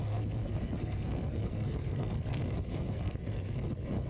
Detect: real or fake fake